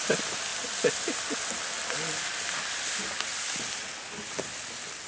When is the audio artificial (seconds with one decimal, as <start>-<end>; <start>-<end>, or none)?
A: none

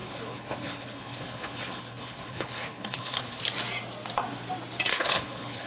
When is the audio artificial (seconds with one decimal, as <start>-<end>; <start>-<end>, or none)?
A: 0.0-3.4; 4.9-5.7